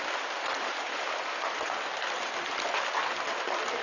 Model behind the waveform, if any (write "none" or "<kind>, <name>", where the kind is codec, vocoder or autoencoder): none